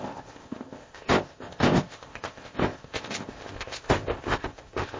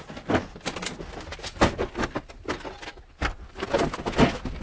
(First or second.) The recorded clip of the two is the second